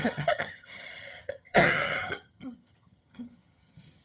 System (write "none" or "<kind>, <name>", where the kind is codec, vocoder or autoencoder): vocoder, HiFi-GAN